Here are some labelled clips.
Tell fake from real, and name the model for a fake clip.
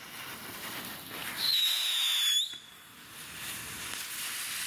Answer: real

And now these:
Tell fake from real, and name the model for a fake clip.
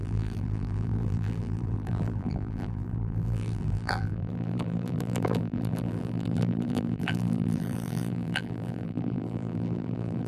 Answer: fake, vocoder, BigVGAN v2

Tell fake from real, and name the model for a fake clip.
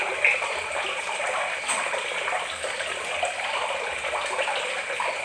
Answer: real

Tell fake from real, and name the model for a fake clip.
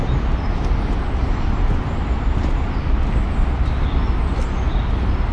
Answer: real